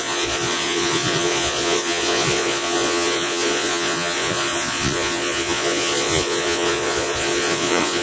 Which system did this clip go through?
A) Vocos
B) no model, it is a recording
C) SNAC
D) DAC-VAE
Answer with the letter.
A